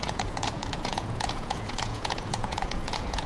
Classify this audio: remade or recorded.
remade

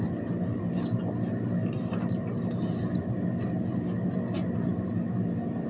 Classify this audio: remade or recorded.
recorded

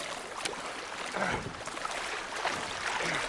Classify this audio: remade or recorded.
recorded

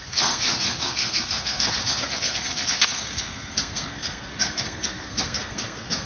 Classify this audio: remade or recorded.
remade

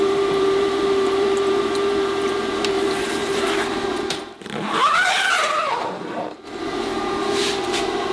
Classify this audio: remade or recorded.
remade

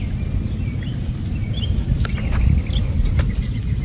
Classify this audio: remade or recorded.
recorded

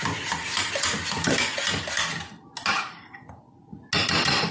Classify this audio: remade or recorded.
recorded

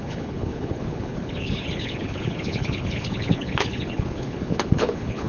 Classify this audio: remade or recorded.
remade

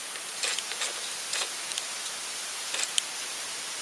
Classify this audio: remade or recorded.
recorded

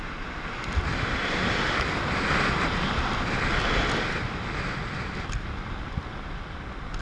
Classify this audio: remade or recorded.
recorded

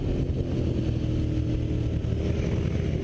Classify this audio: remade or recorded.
recorded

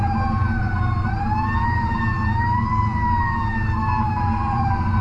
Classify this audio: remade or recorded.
remade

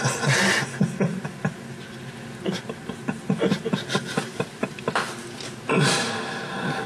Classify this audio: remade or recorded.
recorded